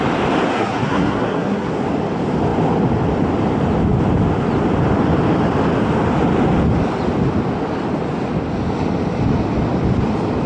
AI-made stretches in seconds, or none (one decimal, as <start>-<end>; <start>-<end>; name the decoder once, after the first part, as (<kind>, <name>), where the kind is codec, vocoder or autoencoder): 0.5-1.7 (codec, SNAC)